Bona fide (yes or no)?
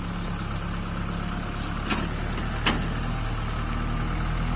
yes